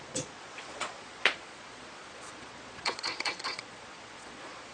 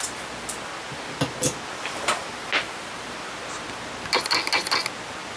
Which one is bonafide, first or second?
second